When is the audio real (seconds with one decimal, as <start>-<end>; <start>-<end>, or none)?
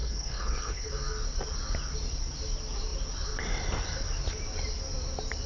0.9-5.5